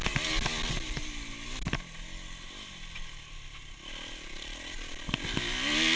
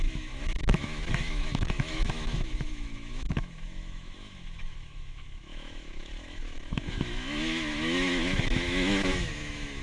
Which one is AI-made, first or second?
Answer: second